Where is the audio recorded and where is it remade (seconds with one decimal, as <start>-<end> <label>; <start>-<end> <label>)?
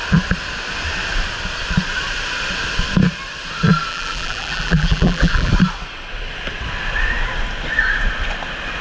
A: 0.0-3.9 recorded; 3.9-5.5 remade; 5.5-8.8 recorded